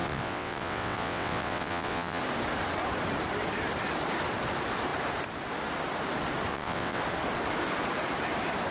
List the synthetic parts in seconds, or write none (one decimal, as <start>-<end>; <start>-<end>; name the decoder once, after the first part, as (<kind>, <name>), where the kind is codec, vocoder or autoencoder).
0.0-2.2 (vocoder, WaveNeXt); 6.5-7.0